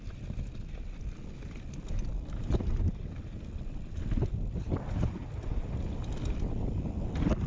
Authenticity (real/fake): real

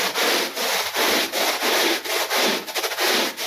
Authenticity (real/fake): real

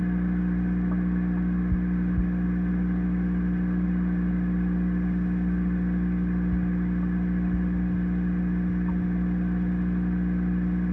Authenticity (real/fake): real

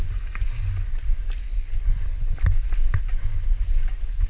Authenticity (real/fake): real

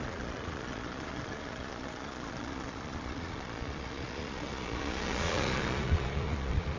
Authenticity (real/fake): fake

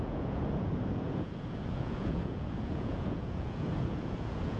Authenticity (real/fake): fake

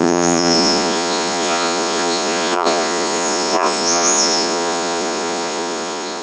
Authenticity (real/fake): fake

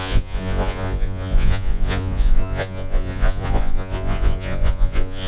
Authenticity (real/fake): fake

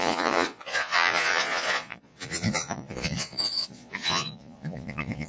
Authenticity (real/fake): fake